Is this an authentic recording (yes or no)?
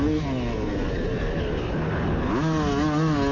yes